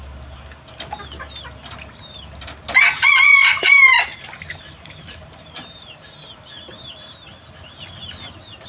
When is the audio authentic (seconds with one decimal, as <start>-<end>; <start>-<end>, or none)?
0.0-3.9; 6.5-8.7